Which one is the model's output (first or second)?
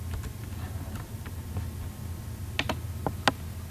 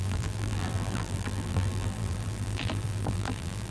second